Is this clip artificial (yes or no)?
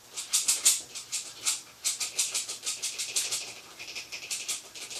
no